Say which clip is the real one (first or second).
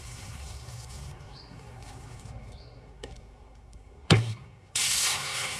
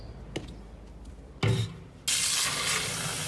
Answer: second